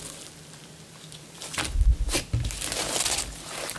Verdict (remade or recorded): recorded